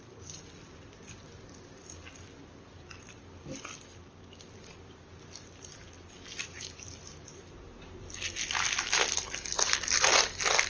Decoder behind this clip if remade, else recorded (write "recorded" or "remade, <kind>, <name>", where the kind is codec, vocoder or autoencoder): recorded